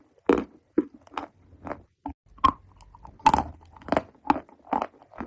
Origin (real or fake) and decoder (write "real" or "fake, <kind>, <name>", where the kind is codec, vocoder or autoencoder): real